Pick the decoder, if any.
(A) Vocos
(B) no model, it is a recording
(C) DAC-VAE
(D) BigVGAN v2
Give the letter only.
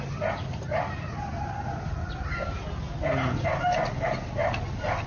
B